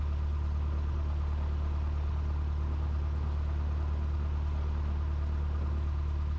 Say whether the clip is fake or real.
real